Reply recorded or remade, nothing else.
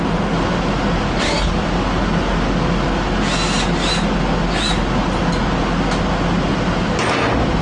recorded